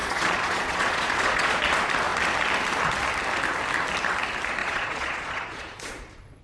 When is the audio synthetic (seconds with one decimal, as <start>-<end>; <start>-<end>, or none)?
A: 0.0-1.6; 4.6-6.4